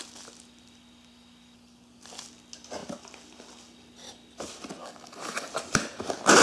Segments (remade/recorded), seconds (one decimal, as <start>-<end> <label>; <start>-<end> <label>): 0.0-4.8 recorded; 4.8-5.5 remade; 5.5-6.4 recorded